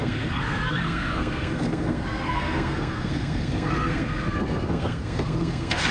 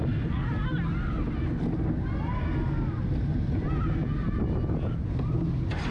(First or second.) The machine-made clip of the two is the first